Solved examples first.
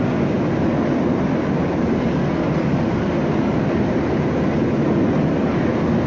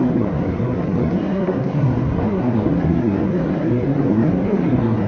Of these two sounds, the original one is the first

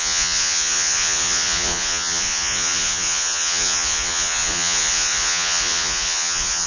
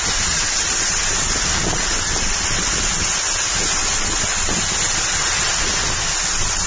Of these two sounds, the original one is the second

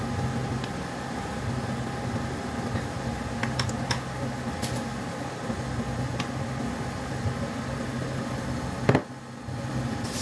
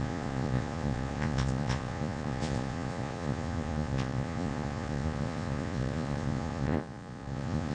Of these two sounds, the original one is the first